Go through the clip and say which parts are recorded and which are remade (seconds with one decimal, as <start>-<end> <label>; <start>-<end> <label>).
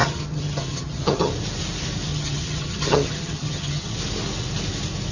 0.0-1.3 remade; 1.3-2.1 recorded; 2.1-3.9 remade; 3.9-5.1 recorded